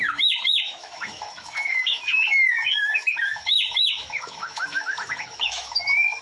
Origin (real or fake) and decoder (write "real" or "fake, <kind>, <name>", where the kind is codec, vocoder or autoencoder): fake, autoencoder, DAC-VAE